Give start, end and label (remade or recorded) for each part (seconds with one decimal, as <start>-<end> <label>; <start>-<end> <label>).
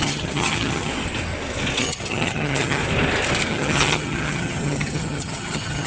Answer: 0.0-0.9 remade; 0.9-1.8 recorded; 1.8-2.8 remade; 2.8-3.5 recorded; 3.5-5.9 remade